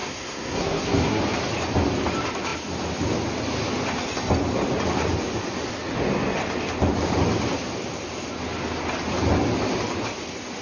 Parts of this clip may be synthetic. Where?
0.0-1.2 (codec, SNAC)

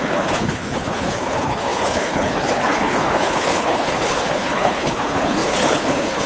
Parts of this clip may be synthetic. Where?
0.0-6.3 (codec, HILCodec)

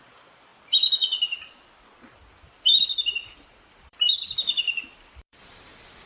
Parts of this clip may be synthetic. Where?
0.0-0.5 (vocoder, BigVGAN v2); 2.8-6.1

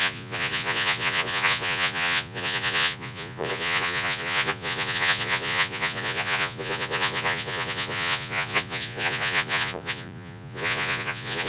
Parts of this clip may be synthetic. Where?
0.0-11.5 (vocoder, Vocos)

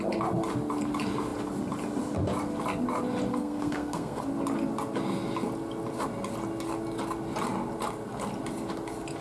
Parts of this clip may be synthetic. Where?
3.3-4.2 (codec, SNAC)